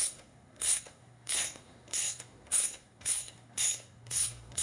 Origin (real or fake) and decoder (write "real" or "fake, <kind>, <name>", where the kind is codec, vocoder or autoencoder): fake, codec, SNAC